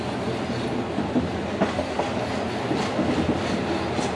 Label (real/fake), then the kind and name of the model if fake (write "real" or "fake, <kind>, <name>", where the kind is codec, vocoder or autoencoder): real